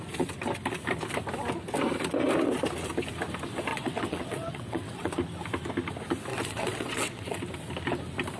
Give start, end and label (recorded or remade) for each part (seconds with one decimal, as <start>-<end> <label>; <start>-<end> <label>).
0.0-3.7 recorded; 3.7-5.1 remade; 5.1-6.3 recorded; 6.3-7.4 remade; 7.4-8.4 recorded